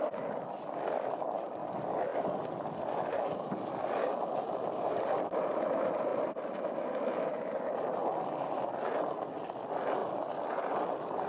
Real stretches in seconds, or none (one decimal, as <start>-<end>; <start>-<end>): 0.0-11.3